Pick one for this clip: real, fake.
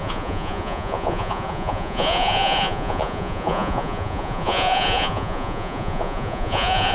fake